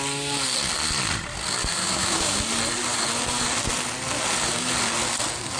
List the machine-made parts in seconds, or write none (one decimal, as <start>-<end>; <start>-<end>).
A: 1.8-2.4